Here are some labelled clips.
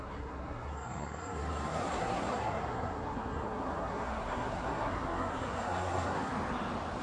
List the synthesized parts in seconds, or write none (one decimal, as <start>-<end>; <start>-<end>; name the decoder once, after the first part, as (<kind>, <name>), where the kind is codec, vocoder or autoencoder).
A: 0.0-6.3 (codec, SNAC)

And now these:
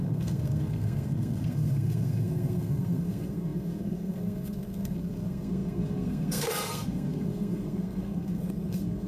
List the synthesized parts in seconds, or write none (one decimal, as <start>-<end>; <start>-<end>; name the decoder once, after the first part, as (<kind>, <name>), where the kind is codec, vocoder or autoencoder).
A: 0.0-9.1 (codec, SNAC)

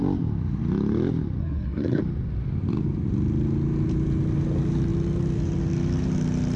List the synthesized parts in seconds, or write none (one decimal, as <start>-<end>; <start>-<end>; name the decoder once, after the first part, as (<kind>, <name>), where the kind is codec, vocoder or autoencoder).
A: 1.4-2.0 (codec, SNAC)

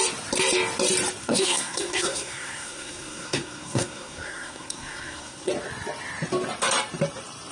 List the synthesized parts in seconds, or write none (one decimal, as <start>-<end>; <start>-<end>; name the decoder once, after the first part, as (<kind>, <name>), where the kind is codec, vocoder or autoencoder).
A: 1.2-5.5 (codec, SNAC)

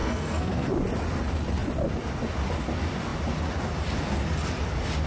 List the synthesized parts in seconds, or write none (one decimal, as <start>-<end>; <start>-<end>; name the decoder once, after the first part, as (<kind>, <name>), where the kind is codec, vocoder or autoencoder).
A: 0.0-0.7 (codec, SNAC)